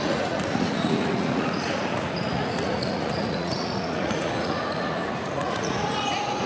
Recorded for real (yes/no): no